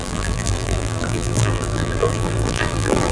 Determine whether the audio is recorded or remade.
remade